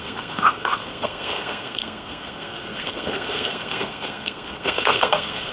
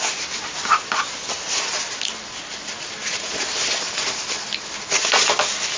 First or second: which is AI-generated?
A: first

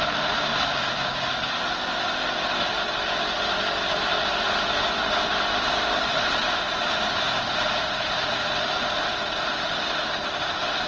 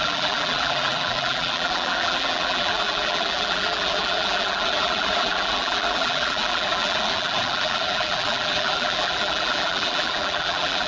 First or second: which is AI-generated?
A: second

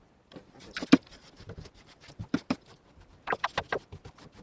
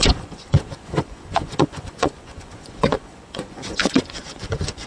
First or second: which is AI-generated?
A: second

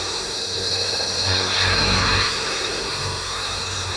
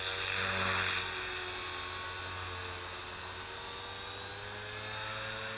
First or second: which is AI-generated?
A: first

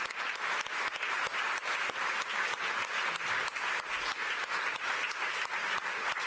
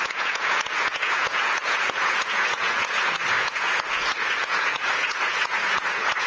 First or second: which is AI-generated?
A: second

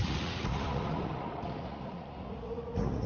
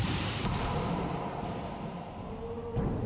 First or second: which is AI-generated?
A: first